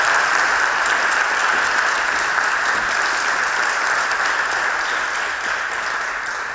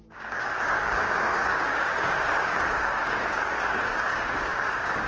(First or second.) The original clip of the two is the first